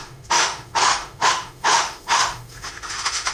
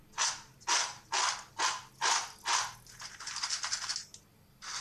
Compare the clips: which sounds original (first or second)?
second